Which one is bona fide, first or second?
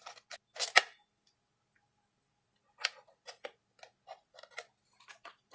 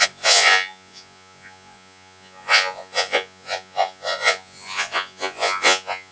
first